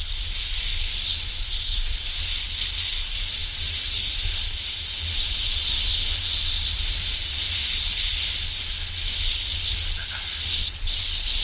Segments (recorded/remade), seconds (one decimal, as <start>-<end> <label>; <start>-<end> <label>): 0.0-3.4 recorded; 3.4-7.9 remade; 7.9-11.4 recorded